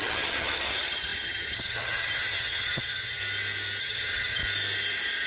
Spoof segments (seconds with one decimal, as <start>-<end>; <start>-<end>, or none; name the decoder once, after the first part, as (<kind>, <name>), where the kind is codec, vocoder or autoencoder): 0.0-3.2 (vocoder, HiFi-GAN); 3.8-4.4